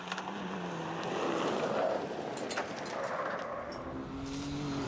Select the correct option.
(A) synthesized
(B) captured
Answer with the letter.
B